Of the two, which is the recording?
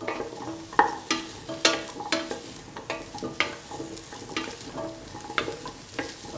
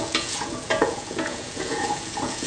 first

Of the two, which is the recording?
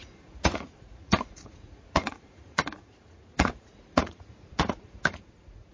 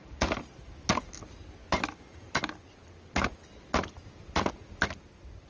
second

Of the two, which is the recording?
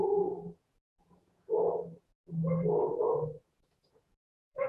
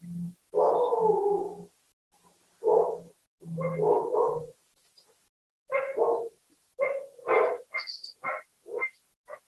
second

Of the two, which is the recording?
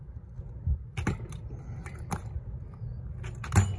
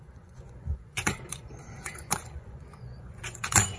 first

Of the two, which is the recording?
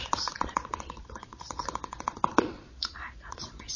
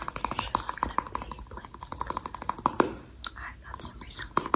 second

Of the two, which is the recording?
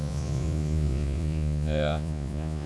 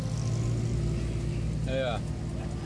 second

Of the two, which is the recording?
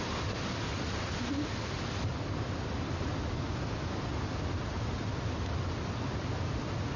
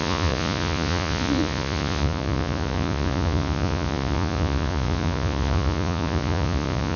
first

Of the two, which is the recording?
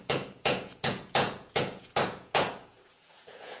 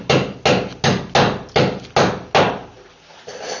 second